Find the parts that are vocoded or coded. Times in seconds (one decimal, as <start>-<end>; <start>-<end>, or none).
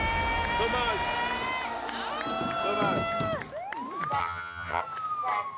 4.2-4.8